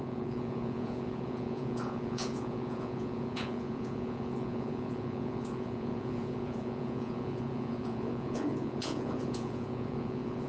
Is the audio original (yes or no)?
no